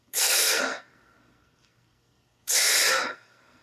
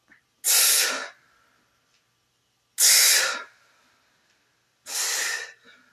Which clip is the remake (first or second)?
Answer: first